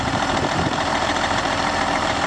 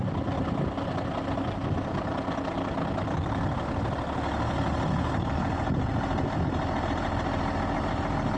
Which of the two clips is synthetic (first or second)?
first